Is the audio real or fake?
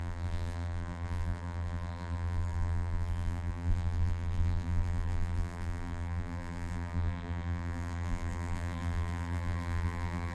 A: fake